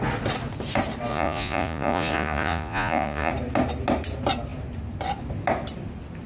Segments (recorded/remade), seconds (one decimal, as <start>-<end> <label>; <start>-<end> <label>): 0.0-1.1 recorded; 1.1-3.3 remade; 3.3-6.3 recorded